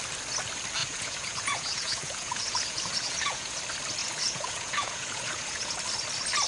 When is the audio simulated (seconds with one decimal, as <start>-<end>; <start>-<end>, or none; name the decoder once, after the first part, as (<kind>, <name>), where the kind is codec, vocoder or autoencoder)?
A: 0.8-3.6 (vocoder, Vocos); 4.0-5.8